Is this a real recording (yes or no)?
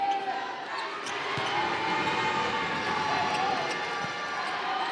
yes